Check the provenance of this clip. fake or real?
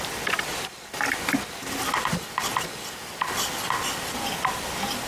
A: real